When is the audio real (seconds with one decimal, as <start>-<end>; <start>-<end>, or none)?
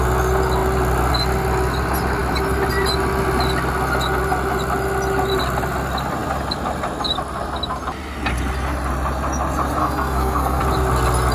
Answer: 0.0-9.8; 10.6-11.3